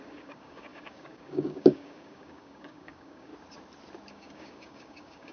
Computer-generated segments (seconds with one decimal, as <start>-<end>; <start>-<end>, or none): 0.0-3.3; 4.1-5.3